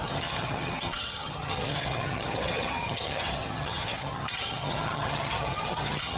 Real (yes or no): no